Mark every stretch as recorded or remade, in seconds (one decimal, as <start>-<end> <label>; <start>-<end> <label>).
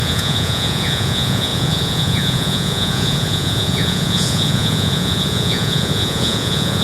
0.0-6.8 remade